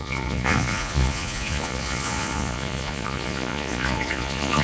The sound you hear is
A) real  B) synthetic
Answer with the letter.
B